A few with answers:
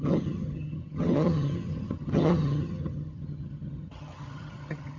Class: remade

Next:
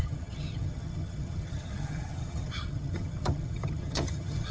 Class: remade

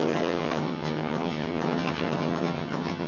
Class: remade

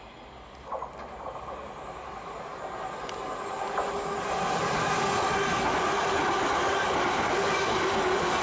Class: recorded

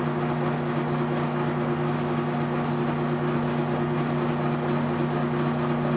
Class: recorded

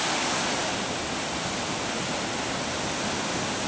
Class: recorded